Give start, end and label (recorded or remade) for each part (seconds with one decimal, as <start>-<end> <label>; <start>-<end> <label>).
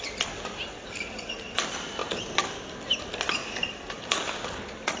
0.0-5.0 recorded